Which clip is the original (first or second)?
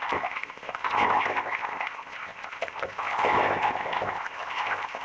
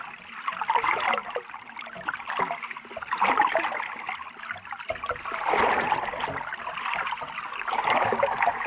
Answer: second